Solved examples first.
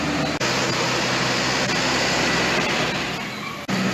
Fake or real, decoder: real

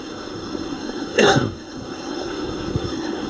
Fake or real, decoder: fake, codec, SNAC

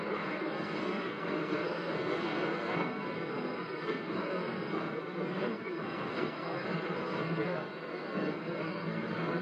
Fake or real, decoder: fake, codec, SNAC